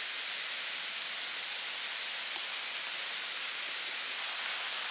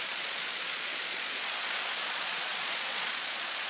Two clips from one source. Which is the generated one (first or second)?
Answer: second